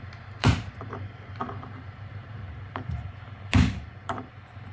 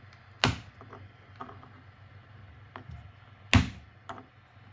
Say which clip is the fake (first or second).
first